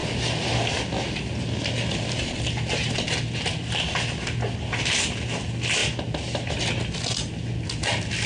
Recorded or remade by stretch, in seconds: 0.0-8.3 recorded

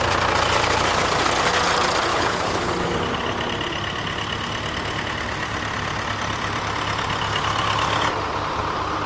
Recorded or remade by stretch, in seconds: 0.0-2.1 recorded; 2.1-2.7 remade; 2.7-9.1 recorded

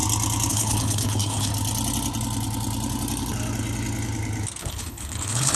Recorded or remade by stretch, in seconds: 0.0-0.5 recorded; 0.5-1.5 remade; 1.5-4.6 recorded; 4.6-5.6 remade

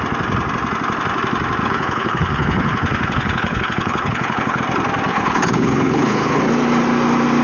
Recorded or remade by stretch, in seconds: 0.0-1.6 recorded; 1.6-4.6 remade; 4.6-5.1 recorded; 5.1-6.4 remade; 6.4-7.4 recorded